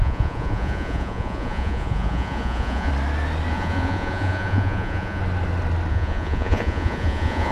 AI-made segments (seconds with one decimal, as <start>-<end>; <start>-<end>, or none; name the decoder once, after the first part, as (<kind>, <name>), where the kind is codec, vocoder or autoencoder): 0.0-2.9 (vocoder, Vocos); 3.5-5.2; 5.9-7.5